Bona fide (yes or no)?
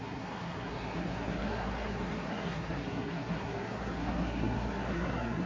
no